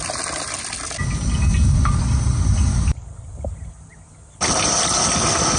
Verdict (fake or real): real